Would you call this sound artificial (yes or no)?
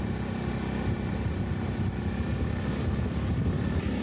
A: no